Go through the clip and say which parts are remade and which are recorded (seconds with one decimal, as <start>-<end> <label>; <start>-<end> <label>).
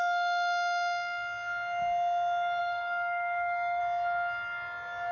0.0-2.6 recorded; 2.6-3.8 remade; 3.8-5.1 recorded